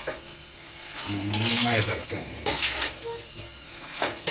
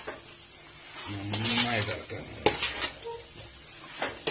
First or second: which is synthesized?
first